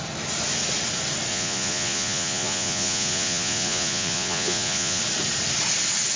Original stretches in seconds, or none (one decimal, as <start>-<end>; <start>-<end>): 0.0-1.3; 5.0-6.2

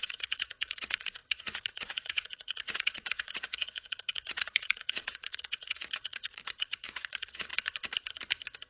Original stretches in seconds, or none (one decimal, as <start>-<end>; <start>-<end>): 7.5-8.7

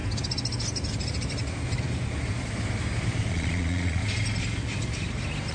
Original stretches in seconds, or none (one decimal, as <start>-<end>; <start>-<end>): 0.0-3.3; 4.0-5.5

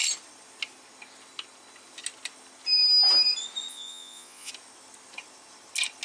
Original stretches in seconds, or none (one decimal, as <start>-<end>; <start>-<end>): 0.0-3.7; 4.5-6.0